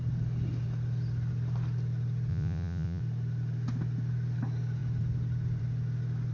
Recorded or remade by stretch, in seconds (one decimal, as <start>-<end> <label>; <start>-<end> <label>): 0.0-2.3 recorded; 2.3-3.0 remade; 3.0-6.3 recorded